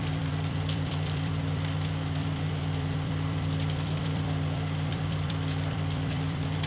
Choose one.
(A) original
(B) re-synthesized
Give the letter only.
B